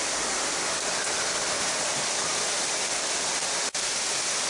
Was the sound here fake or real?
real